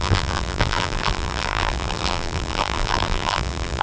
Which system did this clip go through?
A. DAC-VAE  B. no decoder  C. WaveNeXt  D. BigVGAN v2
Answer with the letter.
D